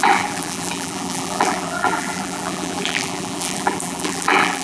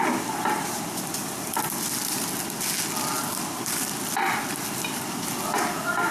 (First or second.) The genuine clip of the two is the second